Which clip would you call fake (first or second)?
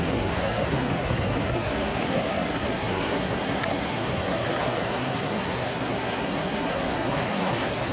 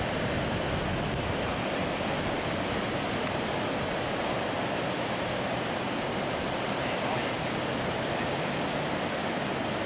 first